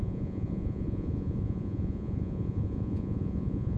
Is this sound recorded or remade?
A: remade